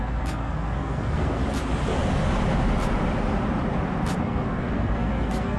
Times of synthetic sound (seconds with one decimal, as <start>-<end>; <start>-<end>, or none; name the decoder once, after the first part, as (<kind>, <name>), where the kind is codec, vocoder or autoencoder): 0.0-1.4 (codec, SNAC); 4.2-5.6